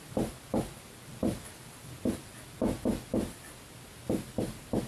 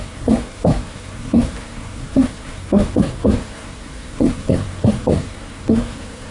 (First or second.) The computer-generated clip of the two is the second